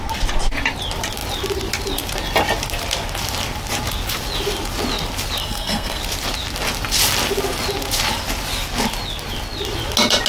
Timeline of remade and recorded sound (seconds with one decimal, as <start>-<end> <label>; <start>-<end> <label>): 0.0-5.4 recorded; 5.4-6.0 remade; 6.0-10.3 recorded